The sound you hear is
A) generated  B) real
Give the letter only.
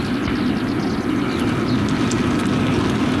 B